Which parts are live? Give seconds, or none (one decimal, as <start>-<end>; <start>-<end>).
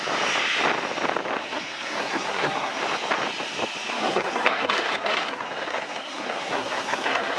0.0-1.4; 2.8-3.9